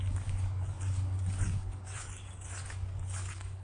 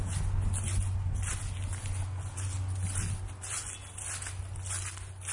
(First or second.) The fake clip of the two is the first